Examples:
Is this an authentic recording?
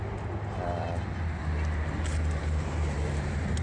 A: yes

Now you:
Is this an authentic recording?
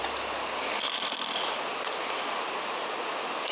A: yes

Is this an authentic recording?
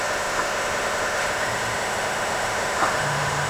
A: no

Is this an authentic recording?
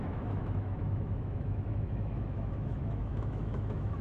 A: no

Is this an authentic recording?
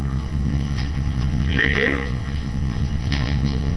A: no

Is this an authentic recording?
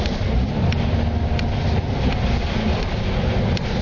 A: yes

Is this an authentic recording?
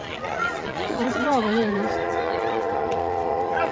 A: no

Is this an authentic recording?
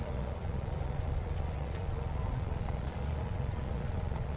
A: no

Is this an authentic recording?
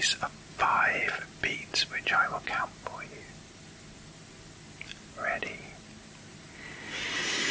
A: yes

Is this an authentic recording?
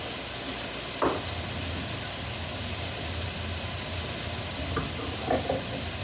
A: yes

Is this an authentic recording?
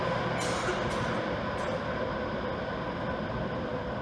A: yes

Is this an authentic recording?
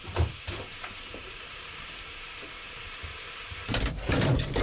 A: no